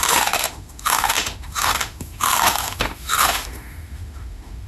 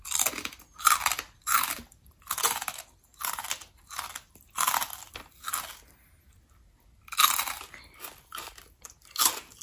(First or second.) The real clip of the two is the second